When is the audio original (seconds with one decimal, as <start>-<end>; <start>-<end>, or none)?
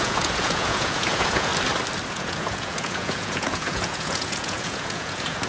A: 1.5-2.1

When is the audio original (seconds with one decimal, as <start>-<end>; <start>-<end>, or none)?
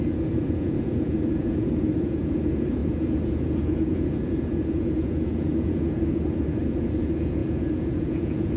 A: none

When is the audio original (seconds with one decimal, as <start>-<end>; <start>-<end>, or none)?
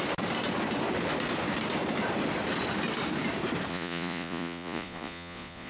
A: 0.0-3.7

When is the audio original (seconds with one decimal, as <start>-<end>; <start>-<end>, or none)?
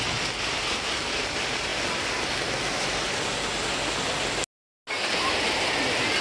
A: 0.0-6.2